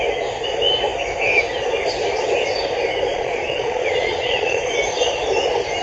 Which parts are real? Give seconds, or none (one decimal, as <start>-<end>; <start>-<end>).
0.0-3.1; 4.7-5.8